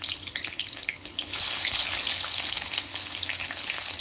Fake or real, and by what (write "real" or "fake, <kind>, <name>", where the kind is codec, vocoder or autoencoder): fake, codec, HILCodec